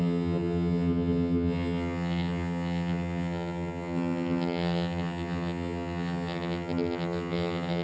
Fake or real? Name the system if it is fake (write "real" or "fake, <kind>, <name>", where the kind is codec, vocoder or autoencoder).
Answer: fake, vocoder, HiFi-GAN